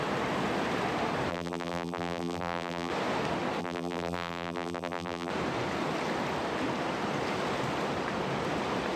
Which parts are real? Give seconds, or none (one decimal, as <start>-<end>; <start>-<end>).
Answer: 0.0-1.3; 2.9-3.6; 5.3-9.0